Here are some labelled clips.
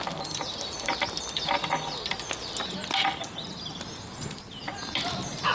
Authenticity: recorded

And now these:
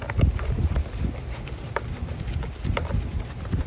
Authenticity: remade